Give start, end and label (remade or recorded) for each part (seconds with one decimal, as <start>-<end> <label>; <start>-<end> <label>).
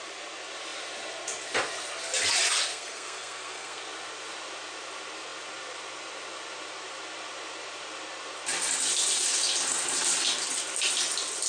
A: 0.0-2.7 recorded; 2.7-3.8 remade; 3.8-11.5 recorded